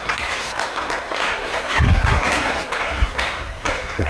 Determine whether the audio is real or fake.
fake